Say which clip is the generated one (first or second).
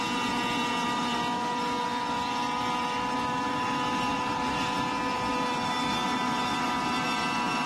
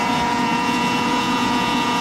second